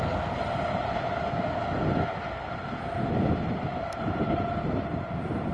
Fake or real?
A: real